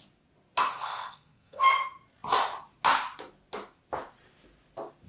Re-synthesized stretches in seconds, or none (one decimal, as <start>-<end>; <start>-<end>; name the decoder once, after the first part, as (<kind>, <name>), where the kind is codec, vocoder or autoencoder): 0.7-1.7 (codec, SNAC)